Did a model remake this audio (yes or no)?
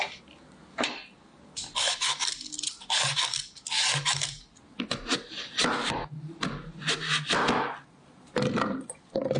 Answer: no